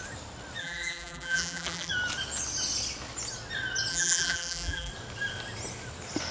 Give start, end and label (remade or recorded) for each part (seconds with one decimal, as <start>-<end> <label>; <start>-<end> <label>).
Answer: 0.0-0.6 recorded; 0.6-1.9 remade; 1.9-3.9 recorded; 3.9-4.9 remade; 4.9-6.3 recorded